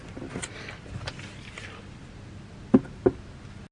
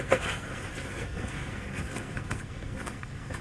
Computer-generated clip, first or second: second